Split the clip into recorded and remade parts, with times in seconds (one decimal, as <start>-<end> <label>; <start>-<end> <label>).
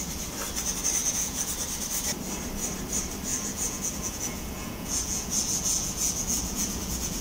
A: 0.0-1.0 recorded; 1.0-1.5 remade; 1.5-3.3 recorded; 3.3-7.2 remade